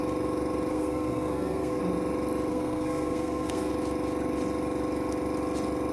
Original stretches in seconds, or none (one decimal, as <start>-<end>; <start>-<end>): 0.0-0.7; 1.8-2.5; 3.7-5.9